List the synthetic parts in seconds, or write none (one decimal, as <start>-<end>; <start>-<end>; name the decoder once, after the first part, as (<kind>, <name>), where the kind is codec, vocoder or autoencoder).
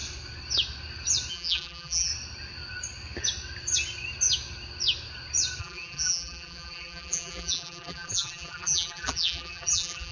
1.3-2.1 (vocoder, BigVGAN v2); 5.6-10.1